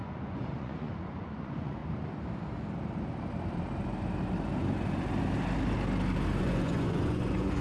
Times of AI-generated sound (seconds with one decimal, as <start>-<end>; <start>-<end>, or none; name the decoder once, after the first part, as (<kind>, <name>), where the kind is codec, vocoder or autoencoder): 0.0-1.8 (vocoder, Vocos); 6.4-7.6